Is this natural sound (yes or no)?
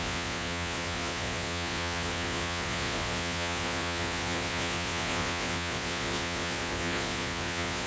no